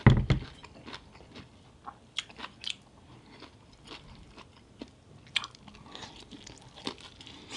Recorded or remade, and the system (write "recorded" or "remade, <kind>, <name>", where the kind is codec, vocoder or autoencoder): recorded